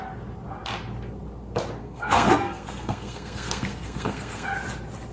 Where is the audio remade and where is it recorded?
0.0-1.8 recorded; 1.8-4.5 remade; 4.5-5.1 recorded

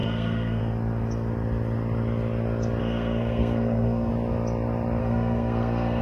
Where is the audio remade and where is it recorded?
0.0-0.6 remade; 0.6-2.8 recorded; 2.8-4.1 remade; 4.1-5.0 recorded; 5.0-6.0 remade

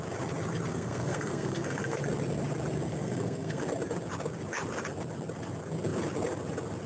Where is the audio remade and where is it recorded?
0.0-0.7 recorded; 0.7-2.0 remade; 2.0-2.9 recorded; 2.9-3.6 remade; 3.6-6.9 recorded

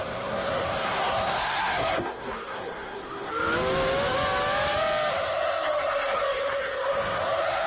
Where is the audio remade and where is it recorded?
0.0-3.3 remade; 3.3-5.1 recorded; 5.1-7.7 remade

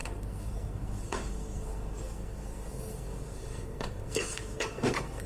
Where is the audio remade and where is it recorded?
0.0-5.3 remade

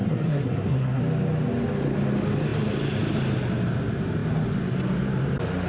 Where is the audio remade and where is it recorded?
0.0-1.0 remade; 1.0-5.7 recorded